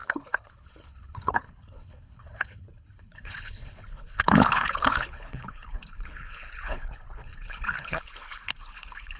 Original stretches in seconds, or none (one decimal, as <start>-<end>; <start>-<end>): none